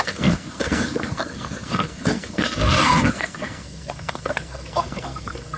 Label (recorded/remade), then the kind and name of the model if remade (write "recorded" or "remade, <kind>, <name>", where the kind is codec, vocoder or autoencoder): remade, codec, SNAC